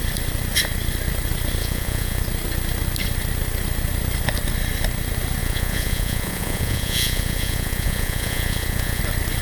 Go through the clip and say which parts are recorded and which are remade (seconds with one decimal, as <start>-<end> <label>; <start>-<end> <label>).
0.0-1.6 recorded; 1.6-2.2 remade; 2.2-5.4 recorded; 5.4-9.0 remade; 9.0-9.4 recorded